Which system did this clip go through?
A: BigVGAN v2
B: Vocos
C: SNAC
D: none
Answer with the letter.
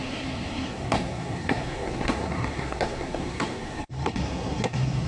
C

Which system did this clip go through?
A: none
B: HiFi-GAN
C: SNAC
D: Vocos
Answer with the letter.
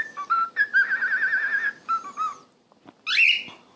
A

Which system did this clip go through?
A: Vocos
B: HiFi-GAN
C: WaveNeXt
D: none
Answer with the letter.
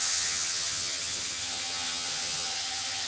B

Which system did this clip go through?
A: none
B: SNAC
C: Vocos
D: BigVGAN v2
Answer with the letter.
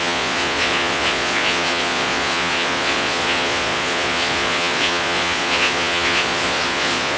C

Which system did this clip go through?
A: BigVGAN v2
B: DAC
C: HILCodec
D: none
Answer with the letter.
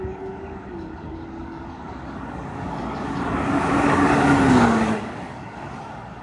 B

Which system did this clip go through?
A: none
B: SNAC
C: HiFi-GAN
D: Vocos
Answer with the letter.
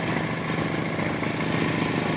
A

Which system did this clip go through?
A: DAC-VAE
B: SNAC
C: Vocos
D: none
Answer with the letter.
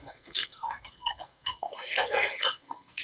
B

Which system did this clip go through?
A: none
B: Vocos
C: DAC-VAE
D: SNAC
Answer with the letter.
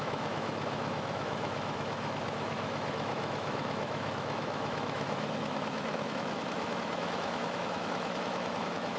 C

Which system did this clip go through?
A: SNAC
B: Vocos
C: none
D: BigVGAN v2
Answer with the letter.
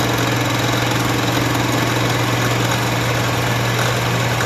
C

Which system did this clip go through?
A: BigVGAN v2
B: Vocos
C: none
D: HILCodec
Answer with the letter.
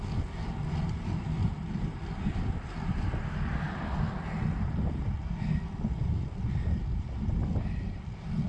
C